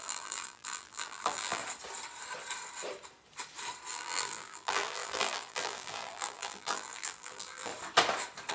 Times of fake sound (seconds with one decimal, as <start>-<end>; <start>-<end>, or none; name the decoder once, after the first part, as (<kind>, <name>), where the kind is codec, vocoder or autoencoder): 0.0-1.6 (vocoder, BigVGAN v2); 3.9-7.7